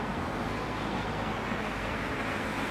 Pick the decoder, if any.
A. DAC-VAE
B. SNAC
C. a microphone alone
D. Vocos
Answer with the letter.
B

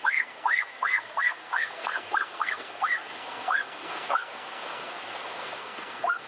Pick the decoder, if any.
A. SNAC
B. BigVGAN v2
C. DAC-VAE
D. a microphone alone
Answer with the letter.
A